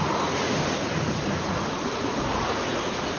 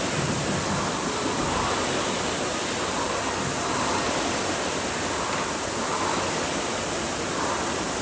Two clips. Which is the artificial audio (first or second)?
first